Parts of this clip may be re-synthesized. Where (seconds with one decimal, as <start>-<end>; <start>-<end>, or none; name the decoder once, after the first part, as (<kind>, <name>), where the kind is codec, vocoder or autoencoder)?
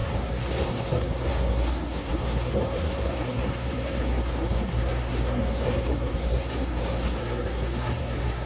0.0-8.5 (codec, SNAC)